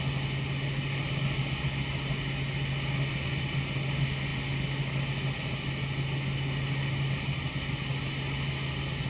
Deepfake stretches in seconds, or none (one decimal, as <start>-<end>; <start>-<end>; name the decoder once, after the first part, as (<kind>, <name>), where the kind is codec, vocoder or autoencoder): none